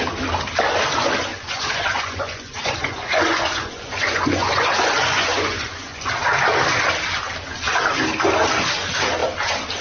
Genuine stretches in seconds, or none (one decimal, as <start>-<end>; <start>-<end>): 0.0-1.3; 6.1-9.8